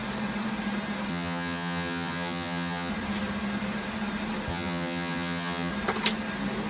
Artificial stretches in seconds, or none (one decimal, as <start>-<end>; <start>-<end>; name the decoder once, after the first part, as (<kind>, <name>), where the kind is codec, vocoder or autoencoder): 1.1-2.9 (vocoder, HiFi-GAN); 4.5-5.7